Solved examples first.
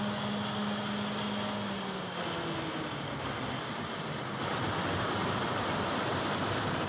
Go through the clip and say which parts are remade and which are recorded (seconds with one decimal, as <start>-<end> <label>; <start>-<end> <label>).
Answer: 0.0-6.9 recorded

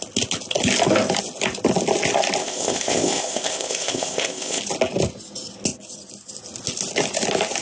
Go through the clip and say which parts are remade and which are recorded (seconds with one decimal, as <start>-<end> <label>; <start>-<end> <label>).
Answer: 0.0-2.4 recorded; 2.4-4.6 remade; 4.6-7.6 recorded

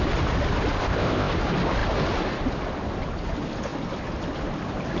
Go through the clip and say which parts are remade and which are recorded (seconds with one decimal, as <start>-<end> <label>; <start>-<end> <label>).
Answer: 0.0-0.8 recorded; 0.8-1.3 remade; 1.3-5.0 recorded